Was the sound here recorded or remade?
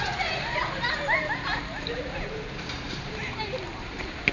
remade